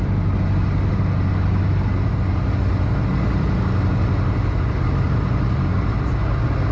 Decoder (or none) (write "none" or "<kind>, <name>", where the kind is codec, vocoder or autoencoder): none